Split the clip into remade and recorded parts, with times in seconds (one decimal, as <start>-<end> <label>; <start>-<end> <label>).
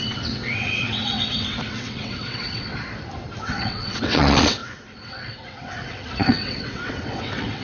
0.0-2.7 remade; 2.7-3.4 recorded; 3.4-7.6 remade